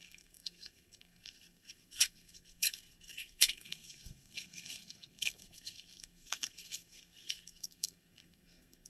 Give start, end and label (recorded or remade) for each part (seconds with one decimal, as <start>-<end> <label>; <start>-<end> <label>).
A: 0.0-8.9 remade